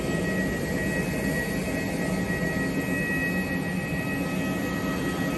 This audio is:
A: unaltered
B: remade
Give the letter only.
A